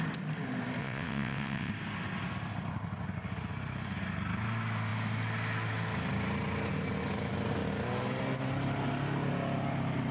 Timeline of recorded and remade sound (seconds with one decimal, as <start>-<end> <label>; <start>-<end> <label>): 0.0-0.8 recorded; 0.8-1.7 remade; 1.7-10.1 recorded